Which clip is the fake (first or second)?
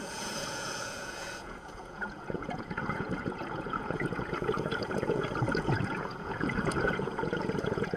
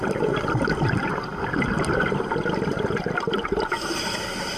first